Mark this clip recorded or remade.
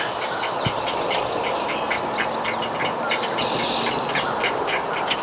recorded